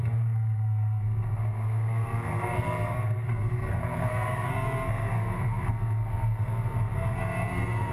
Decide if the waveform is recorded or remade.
remade